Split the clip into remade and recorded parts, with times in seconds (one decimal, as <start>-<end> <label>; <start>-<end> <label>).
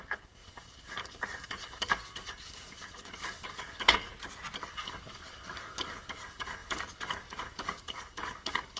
0.0-4.1 remade; 4.1-4.6 recorded; 4.6-8.8 remade